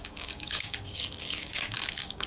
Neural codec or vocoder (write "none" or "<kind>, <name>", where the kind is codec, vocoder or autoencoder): codec, DAC